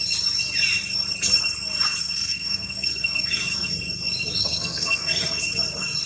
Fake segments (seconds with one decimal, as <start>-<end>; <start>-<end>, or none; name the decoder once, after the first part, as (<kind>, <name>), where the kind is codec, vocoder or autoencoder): 2.0-3.4 (codec, SNAC); 4.4-5.2

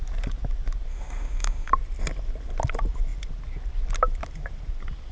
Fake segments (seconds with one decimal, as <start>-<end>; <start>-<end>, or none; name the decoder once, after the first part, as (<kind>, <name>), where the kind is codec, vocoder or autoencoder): 0.9-1.7 (autoencoder, DAC-VAE)